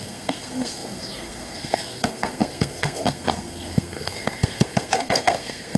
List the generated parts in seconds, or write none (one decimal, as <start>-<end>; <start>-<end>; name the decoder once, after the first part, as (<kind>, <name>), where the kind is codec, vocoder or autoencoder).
0.0-5.8 (codec, SNAC)